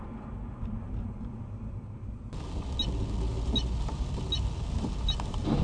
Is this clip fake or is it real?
real